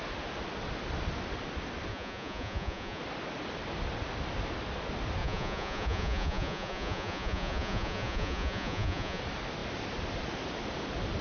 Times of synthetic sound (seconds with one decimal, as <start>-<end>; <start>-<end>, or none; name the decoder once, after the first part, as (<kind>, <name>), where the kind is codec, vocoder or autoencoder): 1.9-3.0 (vocoder, Vocos); 5.2-9.2